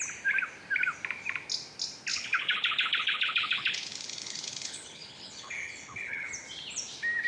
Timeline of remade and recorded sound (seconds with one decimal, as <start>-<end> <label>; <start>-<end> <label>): 0.0-2.1 recorded; 2.1-6.3 remade; 6.3-7.3 recorded